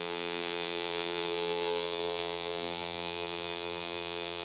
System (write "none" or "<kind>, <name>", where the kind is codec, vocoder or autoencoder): vocoder, BigVGAN v2